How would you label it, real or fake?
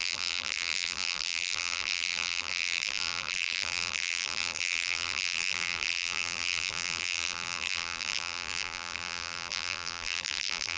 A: fake